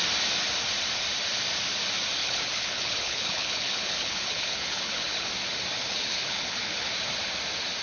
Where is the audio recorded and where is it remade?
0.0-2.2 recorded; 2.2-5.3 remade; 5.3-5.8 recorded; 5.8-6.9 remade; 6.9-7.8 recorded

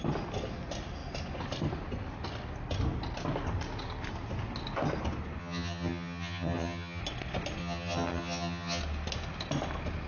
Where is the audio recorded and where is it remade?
0.0-5.4 recorded; 5.4-7.0 remade; 7.0-7.6 recorded; 7.6-8.8 remade; 8.8-10.1 recorded

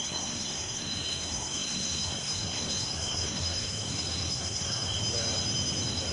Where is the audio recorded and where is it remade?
0.0-5.0 remade; 5.0-6.1 recorded

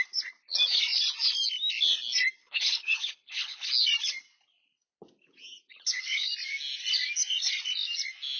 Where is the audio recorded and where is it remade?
0.0-2.4 recorded; 2.4-3.7 remade; 3.7-5.7 recorded; 5.7-6.3 remade; 6.3-8.4 recorded

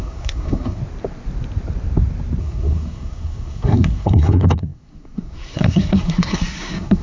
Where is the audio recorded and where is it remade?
0.0-0.8 remade; 0.8-2.4 recorded; 2.4-7.0 remade

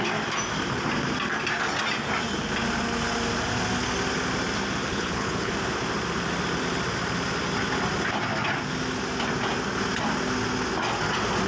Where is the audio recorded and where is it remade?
0.0-4.8 recorded; 4.8-5.5 remade; 5.5-11.5 recorded

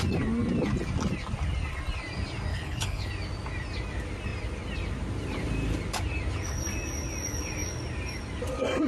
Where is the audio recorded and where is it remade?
0.0-2.5 recorded; 2.5-3.1 remade; 3.1-8.9 recorded